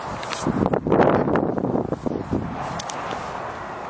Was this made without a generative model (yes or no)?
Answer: yes